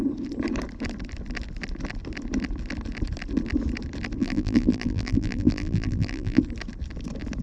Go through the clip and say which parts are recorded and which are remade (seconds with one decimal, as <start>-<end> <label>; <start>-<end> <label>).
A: 0.0-4.2 recorded; 4.2-6.4 remade; 6.4-7.4 recorded